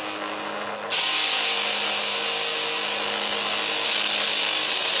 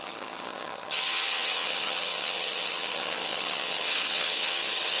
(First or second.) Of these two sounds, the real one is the first